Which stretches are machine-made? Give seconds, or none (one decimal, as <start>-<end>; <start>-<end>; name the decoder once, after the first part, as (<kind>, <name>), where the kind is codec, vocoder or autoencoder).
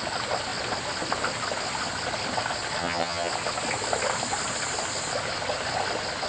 2.8-3.3 (vocoder, HiFi-GAN)